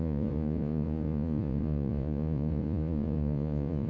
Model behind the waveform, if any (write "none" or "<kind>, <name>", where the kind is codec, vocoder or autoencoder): vocoder, Vocos